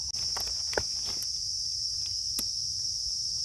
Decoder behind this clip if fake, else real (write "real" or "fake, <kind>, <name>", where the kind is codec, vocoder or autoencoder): real